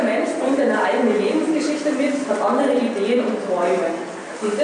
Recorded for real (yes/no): yes